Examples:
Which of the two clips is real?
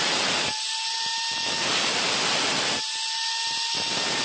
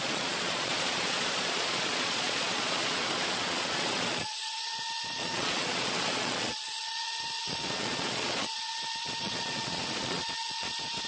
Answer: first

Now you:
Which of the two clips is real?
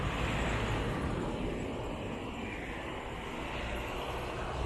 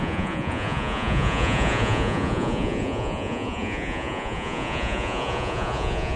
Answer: first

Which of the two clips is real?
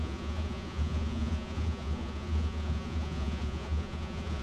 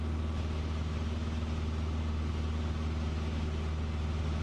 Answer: second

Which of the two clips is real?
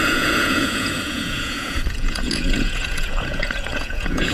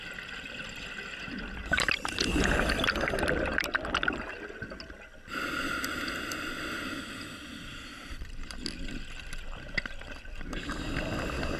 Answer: second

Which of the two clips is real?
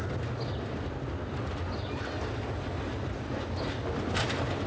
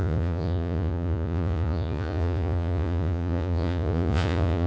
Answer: first